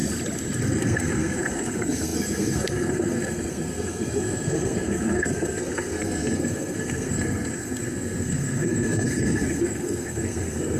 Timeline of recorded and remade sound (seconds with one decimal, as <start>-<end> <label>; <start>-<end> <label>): 0.0-0.6 recorded; 0.6-10.8 remade